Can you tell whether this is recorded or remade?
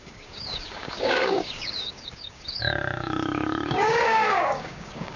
remade